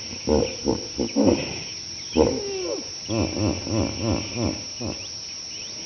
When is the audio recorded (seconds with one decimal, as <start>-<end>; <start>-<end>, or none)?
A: 0.0-5.9